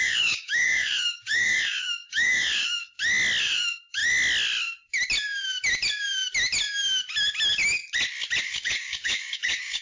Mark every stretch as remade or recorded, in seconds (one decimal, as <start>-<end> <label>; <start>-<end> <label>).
0.0-2.8 remade; 2.8-3.4 recorded; 3.4-4.0 remade; 4.0-8.4 recorded; 8.4-9.8 remade